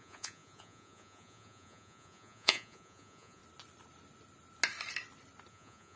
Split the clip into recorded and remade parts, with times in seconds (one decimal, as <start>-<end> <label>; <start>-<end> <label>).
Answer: 0.0-3.4 remade; 3.4-5.5 recorded; 5.5-6.0 remade